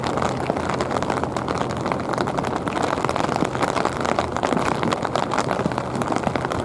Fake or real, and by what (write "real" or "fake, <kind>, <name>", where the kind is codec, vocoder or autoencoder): real